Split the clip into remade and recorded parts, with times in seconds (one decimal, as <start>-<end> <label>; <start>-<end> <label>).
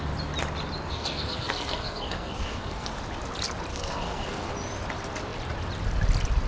0.0-0.9 recorded; 0.9-3.0 remade; 3.0-3.7 recorded; 3.7-4.5 remade; 4.5-6.5 recorded